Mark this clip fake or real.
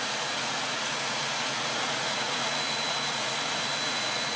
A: fake